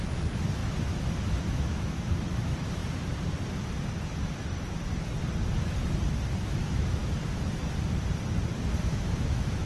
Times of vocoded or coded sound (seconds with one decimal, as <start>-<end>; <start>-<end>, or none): 0.0-2.8; 6.4-7.0; 8.8-9.7